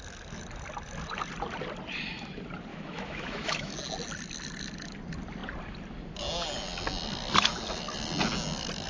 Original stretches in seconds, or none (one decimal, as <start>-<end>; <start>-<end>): 0.0-2.7; 3.7-8.9